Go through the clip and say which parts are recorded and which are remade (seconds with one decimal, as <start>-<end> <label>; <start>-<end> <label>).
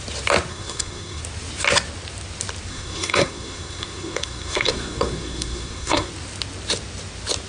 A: 0.0-0.5 recorded; 0.5-1.2 remade; 1.2-2.7 recorded; 2.7-6.1 remade; 6.1-7.5 recorded